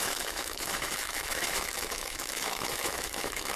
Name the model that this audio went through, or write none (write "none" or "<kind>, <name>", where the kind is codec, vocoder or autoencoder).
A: autoencoder, DAC-VAE